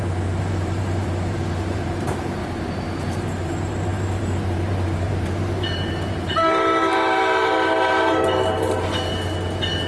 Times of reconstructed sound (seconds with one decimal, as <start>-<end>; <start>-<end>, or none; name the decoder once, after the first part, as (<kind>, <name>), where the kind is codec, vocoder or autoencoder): 0.0-2.4 (vocoder, BigVGAN v2); 3.2-9.1